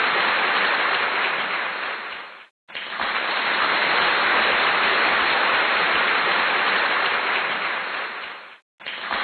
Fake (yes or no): no